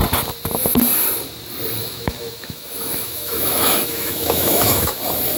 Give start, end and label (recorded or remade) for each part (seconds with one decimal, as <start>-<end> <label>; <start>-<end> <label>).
0.0-1.8 recorded; 1.8-5.0 remade; 5.0-5.4 recorded